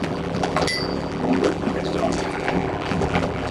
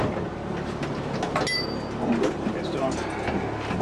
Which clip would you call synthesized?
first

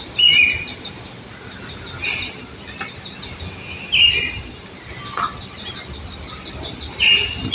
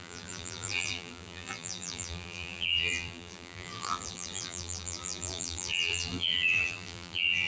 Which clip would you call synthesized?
second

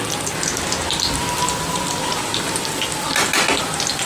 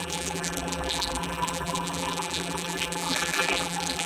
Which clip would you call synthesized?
second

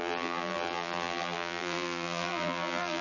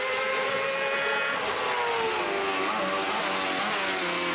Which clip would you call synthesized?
first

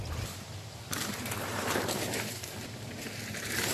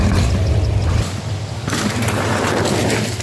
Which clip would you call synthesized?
first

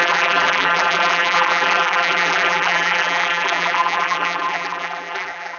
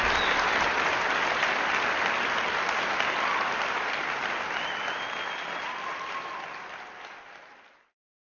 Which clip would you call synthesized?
first